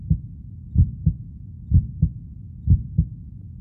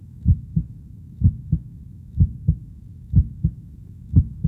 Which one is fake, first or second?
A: second